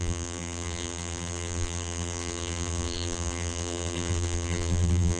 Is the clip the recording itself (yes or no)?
no